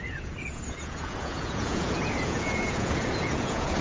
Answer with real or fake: fake